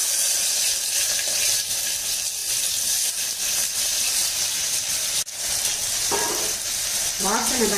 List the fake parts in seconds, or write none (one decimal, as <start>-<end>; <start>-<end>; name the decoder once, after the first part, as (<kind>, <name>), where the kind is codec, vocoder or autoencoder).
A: 2.4-3.1 (vocoder, BigVGAN v2); 3.9-7.8

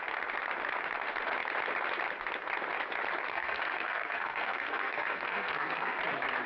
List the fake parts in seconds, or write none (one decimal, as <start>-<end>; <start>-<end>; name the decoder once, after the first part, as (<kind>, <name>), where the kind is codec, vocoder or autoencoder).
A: 3.3-6.0 (codec, SNAC)